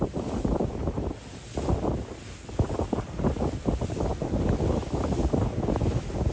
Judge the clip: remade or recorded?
recorded